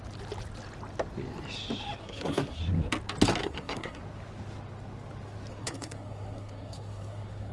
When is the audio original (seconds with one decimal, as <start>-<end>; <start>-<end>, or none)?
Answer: 0.0-2.0; 2.6-3.4; 4.0-5.5